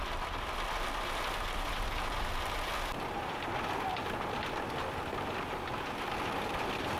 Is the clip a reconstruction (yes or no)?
no